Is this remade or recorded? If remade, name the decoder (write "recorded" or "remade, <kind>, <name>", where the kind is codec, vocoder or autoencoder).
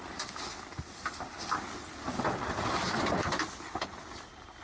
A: recorded